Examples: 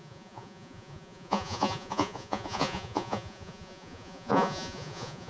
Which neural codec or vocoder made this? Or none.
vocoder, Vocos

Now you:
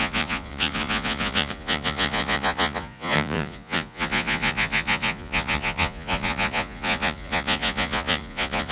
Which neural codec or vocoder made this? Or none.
vocoder, Vocos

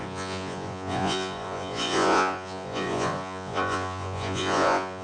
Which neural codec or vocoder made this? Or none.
vocoder, Vocos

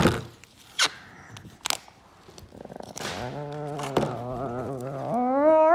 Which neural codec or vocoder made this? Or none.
none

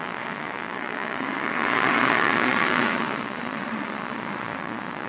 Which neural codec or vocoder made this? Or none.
vocoder, Vocos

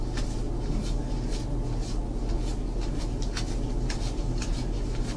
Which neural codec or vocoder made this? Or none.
none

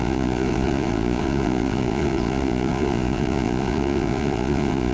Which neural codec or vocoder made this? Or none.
vocoder, Vocos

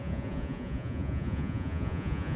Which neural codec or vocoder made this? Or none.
vocoder, Vocos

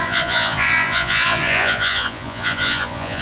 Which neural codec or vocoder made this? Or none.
vocoder, Vocos